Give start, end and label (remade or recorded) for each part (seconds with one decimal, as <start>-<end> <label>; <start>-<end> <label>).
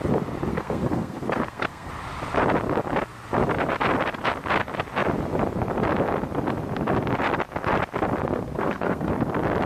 0.0-0.5 recorded; 0.5-1.9 remade; 1.9-8.2 recorded; 8.2-9.1 remade; 9.1-9.7 recorded